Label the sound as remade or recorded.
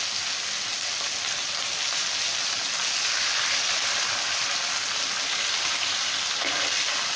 recorded